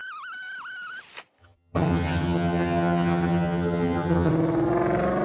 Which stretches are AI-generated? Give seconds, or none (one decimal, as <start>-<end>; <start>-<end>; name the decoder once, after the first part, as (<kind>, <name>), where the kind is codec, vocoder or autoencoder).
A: 1.4-4.3 (vocoder, HiFi-GAN)